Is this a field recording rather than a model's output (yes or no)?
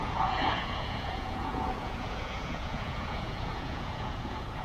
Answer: no